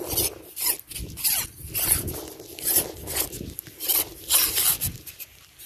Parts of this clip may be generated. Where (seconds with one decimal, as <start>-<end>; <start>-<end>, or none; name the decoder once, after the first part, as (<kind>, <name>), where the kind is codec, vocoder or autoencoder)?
0.9-4.2 (vocoder, BigVGAN v2)